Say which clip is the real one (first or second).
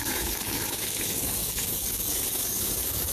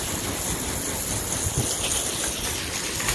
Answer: second